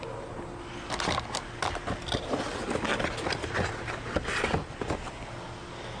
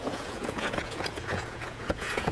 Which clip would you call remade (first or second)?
second